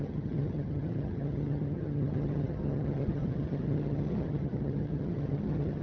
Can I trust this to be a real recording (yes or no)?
no